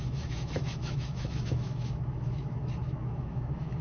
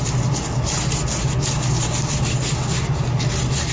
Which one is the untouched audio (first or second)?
second